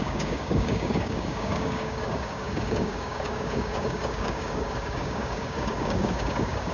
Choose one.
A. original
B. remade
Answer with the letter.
B